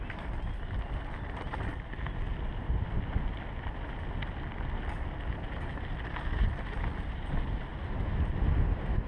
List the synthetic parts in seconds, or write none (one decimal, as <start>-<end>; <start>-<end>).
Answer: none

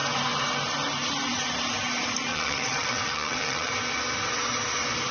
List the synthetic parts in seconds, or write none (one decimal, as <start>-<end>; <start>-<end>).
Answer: 2.3-3.7

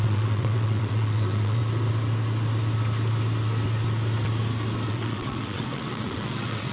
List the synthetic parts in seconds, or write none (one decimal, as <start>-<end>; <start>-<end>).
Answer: 0.0-1.6; 4.9-6.7

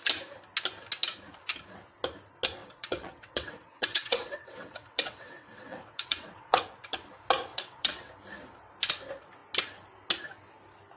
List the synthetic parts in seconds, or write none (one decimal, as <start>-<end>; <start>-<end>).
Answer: 2.6-6.6; 7.5-8.1

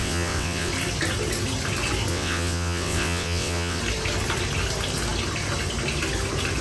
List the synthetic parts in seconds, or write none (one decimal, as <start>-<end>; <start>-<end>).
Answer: 0.0-0.7; 2.1-3.8